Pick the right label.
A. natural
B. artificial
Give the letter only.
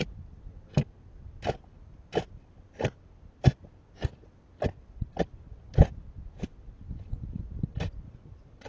A